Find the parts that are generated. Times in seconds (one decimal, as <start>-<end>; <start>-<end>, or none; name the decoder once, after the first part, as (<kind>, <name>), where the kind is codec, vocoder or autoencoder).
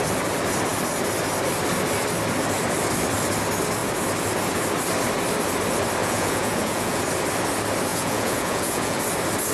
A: 6.0-7.0 (vocoder, Vocos); 7.9-9.0